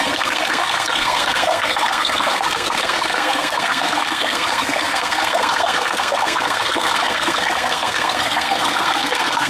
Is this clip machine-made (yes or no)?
yes